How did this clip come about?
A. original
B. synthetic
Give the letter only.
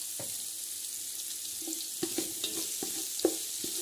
A